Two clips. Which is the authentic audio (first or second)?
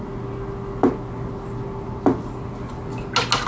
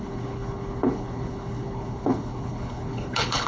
first